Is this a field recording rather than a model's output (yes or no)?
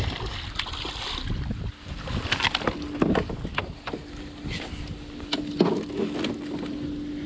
yes